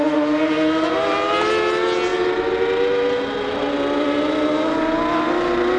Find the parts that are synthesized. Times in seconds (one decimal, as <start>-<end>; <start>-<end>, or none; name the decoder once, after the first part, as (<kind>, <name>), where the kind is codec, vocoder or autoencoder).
none